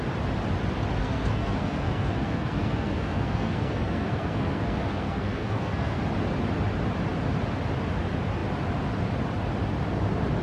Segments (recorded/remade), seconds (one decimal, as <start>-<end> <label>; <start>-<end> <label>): 0.0-1.0 recorded; 1.0-6.0 remade; 6.0-10.4 recorded